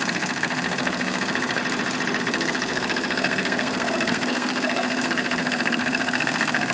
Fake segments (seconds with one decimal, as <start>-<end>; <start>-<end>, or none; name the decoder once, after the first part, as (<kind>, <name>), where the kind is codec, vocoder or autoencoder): 0.0-1.6 (codec, SNAC); 2.2-6.7